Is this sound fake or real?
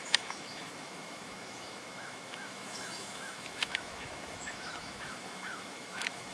fake